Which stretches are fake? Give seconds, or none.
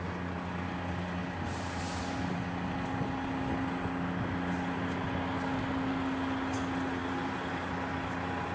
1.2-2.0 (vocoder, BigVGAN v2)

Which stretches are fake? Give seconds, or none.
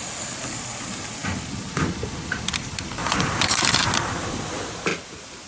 3.0-3.9 (vocoder, BigVGAN v2); 4.9-5.5